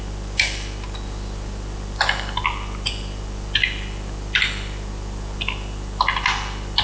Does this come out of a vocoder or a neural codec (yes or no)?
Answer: no